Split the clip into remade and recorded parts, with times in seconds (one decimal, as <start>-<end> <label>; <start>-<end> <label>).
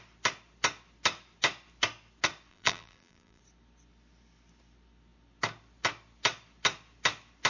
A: 0.0-2.5 recorded; 2.5-3.4 remade; 3.4-7.5 recorded